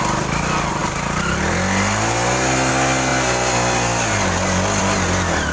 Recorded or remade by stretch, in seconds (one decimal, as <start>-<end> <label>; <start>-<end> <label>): 0.0-5.5 recorded